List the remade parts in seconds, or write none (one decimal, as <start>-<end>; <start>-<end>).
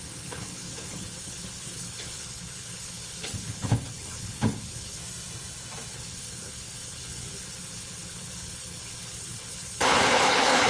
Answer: 0.0-5.0; 5.9-10.7